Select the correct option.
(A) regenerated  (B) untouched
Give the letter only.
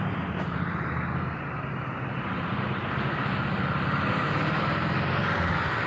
B